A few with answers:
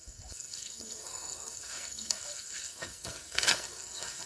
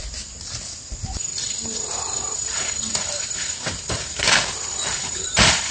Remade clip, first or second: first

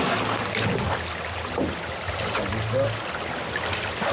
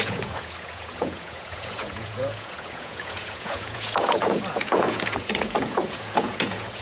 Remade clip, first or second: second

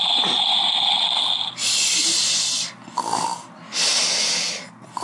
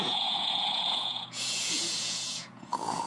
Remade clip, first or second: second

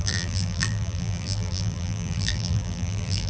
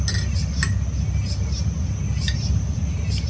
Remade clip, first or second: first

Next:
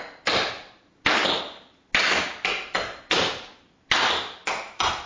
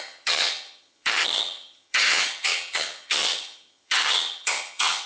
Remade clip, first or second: second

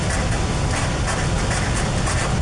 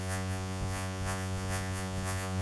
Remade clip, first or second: second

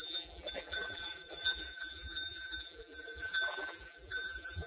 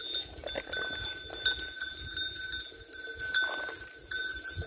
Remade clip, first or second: first